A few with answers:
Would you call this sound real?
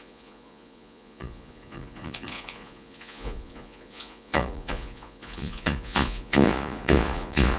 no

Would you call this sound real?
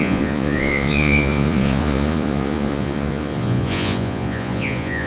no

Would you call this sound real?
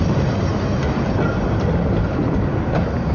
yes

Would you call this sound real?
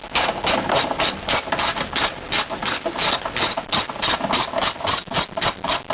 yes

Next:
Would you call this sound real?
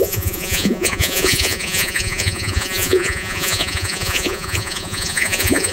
no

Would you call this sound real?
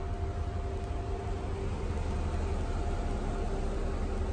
yes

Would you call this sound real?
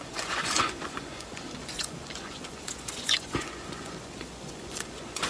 no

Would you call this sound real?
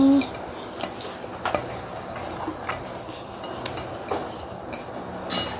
yes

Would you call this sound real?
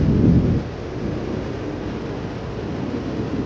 yes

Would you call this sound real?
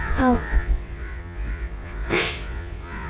no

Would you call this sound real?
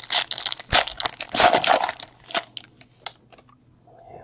yes